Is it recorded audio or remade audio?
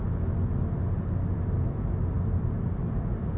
recorded